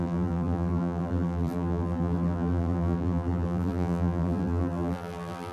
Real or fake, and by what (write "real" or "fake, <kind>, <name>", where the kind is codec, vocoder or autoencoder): fake, vocoder, BigVGAN v2